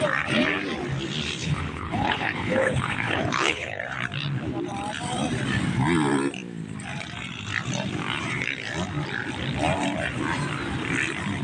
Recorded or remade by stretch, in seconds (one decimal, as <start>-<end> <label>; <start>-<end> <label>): 0.0-1.4 recorded; 1.4-3.8 remade; 3.8-11.4 recorded